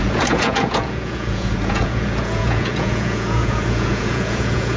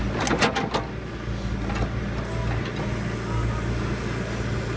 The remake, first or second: first